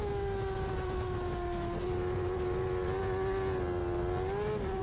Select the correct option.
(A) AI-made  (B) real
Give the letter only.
B